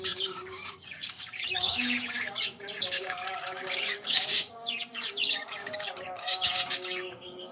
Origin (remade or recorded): remade